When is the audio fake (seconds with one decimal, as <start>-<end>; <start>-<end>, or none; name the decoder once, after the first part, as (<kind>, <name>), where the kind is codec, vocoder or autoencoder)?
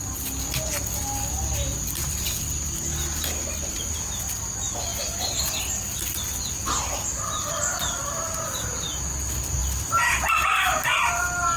none